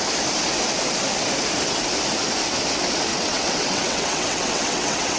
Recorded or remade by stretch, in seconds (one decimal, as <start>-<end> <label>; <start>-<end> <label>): 0.0-3.1 recorded; 3.1-5.2 remade